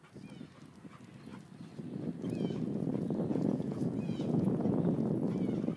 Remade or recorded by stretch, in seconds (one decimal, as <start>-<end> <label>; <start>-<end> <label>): 0.0-3.3 recorded; 3.3-5.1 remade; 5.1-5.8 recorded